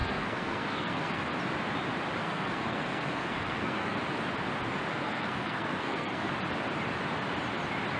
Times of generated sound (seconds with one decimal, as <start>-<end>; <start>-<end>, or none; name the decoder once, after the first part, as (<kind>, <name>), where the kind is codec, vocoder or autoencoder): 0.0-1.3 (codec, SNAC); 2.2-4.0; 4.9-6.3